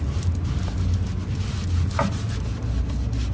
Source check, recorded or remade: recorded